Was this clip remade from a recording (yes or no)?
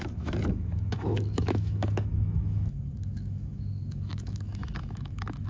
yes